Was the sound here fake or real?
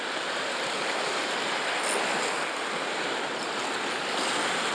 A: real